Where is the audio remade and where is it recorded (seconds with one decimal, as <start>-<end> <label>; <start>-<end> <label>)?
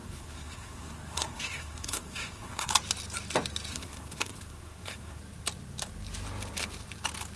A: 0.0-2.7 remade; 2.7-3.7 recorded; 3.7-5.2 remade; 5.2-7.4 recorded